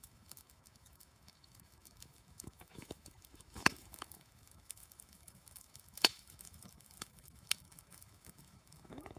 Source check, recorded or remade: remade